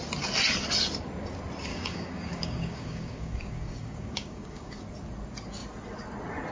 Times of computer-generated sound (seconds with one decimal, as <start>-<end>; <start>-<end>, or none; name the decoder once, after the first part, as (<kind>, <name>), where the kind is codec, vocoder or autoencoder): 1.7-4.8 (codec, DAC)